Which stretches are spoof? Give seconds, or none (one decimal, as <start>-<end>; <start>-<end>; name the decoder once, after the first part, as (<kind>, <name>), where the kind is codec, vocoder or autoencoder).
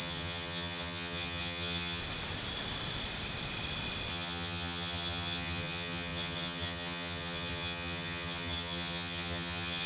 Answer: 0.0-2.0 (vocoder, HiFi-GAN); 4.1-9.9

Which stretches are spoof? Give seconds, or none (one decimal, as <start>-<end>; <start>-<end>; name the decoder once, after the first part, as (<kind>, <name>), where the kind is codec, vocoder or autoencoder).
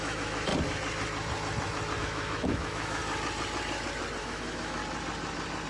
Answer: 0.0-0.5 (autoencoder, DAC-VAE); 2.0-3.0; 4.2-4.8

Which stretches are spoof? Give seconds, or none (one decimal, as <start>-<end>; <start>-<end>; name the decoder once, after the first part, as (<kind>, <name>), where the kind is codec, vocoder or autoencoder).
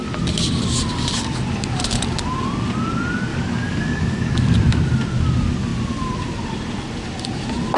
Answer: 3.3-4.3 (codec, DAC)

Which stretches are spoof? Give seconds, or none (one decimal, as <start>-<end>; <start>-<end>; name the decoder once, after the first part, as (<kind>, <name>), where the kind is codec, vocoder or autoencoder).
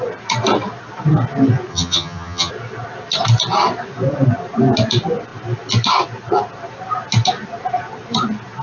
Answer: 1.7-2.5 (vocoder, HiFi-GAN)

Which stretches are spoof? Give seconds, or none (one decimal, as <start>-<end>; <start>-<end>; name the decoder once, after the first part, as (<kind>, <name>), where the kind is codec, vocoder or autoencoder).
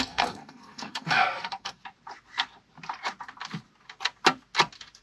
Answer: 0.0-1.8 (codec, SNAC)